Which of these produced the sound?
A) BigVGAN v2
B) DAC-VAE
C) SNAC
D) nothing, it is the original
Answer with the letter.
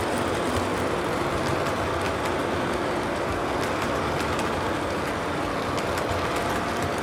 D